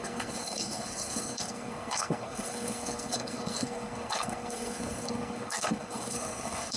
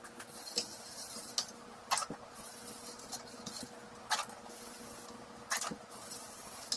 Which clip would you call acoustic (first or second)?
second